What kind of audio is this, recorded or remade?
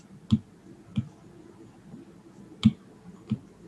recorded